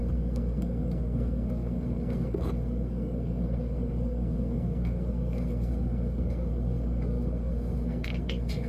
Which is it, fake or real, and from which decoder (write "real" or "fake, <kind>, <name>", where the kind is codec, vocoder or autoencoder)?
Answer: fake, codec, SNAC